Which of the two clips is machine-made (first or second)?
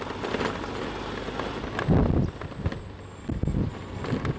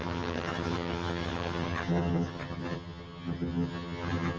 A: second